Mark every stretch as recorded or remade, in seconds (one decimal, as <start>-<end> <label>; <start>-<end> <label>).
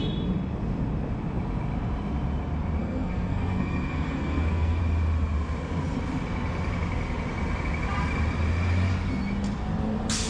0.0-2.8 recorded; 2.8-4.8 remade; 4.8-10.3 recorded